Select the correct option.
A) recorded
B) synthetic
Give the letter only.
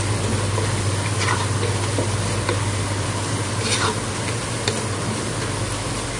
A